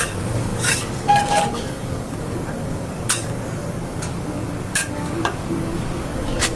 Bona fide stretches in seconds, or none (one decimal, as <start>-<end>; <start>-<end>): none